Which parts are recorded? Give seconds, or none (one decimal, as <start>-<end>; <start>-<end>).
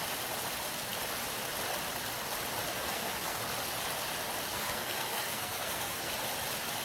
0.0-2.7; 3.4-4.5; 6.1-6.8